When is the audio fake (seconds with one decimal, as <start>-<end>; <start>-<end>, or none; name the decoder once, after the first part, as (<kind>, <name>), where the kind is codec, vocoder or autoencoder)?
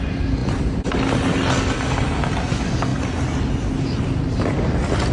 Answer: none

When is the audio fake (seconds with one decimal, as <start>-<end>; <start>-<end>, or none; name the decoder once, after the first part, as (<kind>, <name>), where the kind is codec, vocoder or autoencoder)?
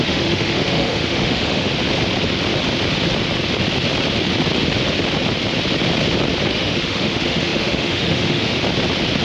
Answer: 0.0-1.7 (autoencoder, DAC-VAE); 6.5-8.6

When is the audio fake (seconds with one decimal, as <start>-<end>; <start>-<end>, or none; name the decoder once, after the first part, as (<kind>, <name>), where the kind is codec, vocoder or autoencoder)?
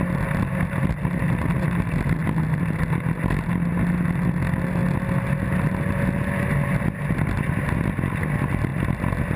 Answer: none